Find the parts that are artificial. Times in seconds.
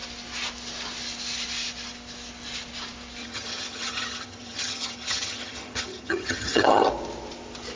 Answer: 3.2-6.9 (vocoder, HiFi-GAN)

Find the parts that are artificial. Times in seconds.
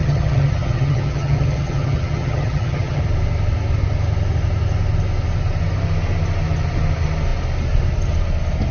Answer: 0.0-3.0 (vocoder, HiFi-GAN)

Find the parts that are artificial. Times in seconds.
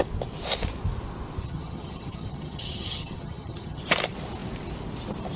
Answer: 1.4-3.8 (vocoder, HiFi-GAN)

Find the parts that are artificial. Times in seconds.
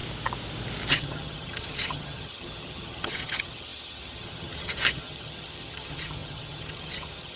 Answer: 0.9-7.4 (vocoder, HiFi-GAN)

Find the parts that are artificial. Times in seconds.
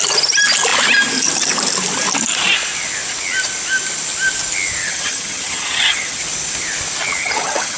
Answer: 4.8-6.2 (vocoder, HiFi-GAN); 7.2-7.8